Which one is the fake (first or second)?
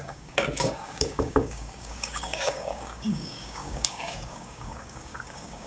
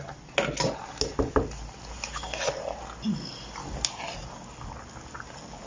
first